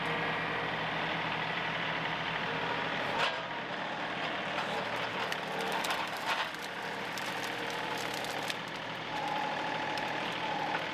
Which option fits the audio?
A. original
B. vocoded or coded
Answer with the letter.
B